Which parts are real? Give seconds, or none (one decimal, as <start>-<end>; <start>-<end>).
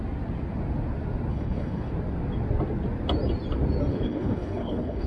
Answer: 0.0-1.3; 1.9-3.9